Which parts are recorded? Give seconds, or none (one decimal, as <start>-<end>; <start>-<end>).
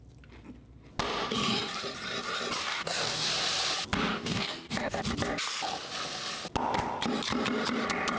0.0-2.6; 3.3-4.1; 5.0-8.2